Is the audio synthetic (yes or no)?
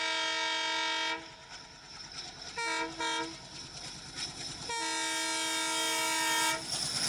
no